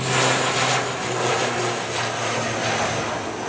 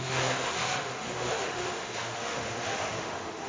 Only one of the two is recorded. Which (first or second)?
first